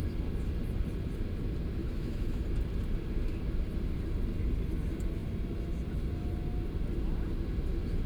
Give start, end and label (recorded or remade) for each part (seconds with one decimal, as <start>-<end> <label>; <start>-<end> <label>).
0.0-1.8 recorded; 1.8-2.4 remade; 2.4-8.1 recorded